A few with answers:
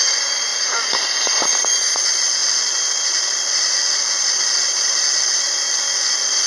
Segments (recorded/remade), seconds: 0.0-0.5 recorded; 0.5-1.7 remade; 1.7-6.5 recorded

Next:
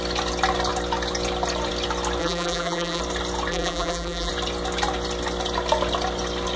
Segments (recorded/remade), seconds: 0.0-2.2 recorded; 2.2-3.0 remade; 3.0-3.5 recorded; 3.5-4.3 remade; 4.3-6.6 recorded

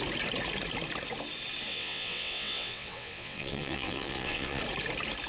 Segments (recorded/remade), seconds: 0.0-1.7 recorded; 1.7-4.6 remade; 4.6-5.3 recorded

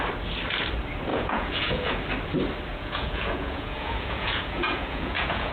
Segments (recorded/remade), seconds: 0.0-1.1 recorded; 1.1-2.0 remade; 2.0-2.7 recorded; 2.7-5.5 remade

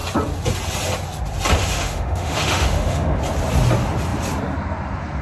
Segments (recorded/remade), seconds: 0.0-1.6 recorded; 1.6-3.2 remade; 3.2-5.2 recorded

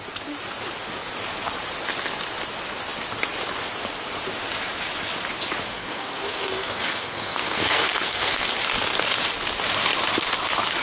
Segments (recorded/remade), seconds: 0.0-5.7 recorded; 5.7-8.5 remade; 8.5-10.8 recorded

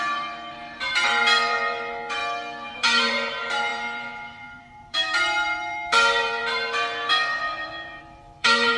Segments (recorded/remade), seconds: 0.0-2.2 remade; 2.2-2.7 recorded; 2.7-8.8 remade

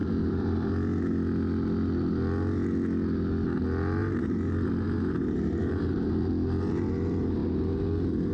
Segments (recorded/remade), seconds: 0.0-0.7 remade; 0.7-4.0 recorded; 4.0-6.3 remade; 6.3-8.3 recorded